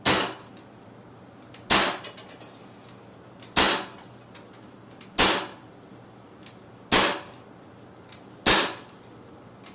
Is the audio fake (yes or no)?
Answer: no